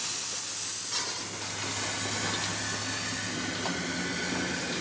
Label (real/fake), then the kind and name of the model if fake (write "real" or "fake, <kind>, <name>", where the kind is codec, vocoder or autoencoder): real